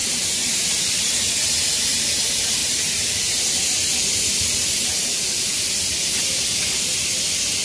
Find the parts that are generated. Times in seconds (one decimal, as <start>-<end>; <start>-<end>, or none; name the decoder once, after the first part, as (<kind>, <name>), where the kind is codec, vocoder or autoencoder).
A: 0.0-1.3 (vocoder, BigVGAN v2); 2.6-3.4; 4.9-5.5